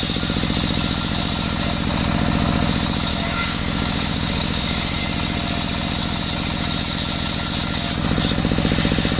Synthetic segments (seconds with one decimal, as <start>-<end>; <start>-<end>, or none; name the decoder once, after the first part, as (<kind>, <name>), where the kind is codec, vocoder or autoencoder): 3.1-5.0 (codec, DAC)